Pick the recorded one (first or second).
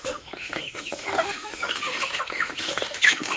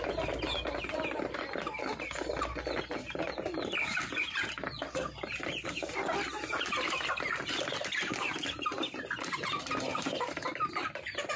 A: second